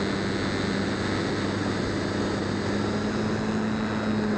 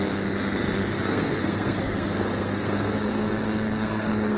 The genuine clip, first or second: first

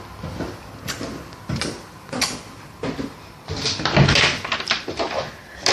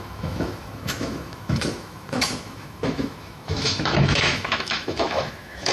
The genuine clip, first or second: first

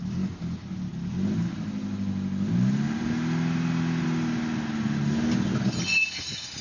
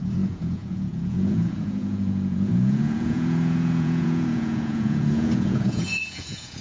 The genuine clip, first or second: first